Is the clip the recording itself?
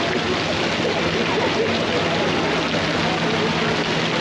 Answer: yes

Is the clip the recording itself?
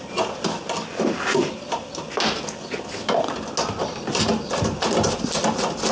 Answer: yes